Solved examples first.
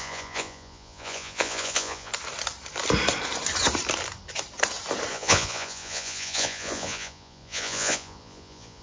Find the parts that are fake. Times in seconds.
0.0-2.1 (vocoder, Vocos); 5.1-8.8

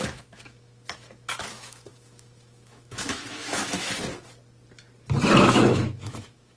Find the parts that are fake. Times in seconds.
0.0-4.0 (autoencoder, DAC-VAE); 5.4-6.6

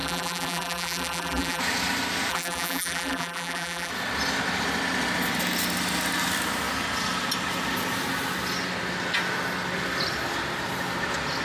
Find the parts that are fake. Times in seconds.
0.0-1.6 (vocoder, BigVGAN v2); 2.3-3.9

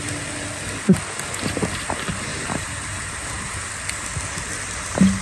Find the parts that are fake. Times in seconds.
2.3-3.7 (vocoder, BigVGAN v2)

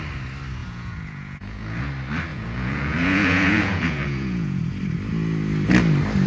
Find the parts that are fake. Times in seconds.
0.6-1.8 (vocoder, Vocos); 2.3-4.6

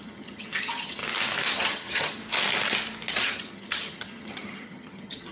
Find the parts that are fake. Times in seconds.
0.0-1.0 (vocoder, HiFi-GAN); 1.5-2.2; 3.1-5.3

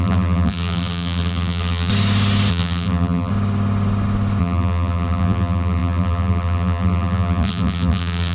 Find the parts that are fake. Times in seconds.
0.0-1.9 (vocoder, BigVGAN v2); 2.5-3.3; 4.4-8.3

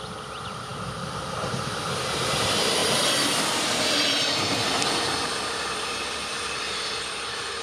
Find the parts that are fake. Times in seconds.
none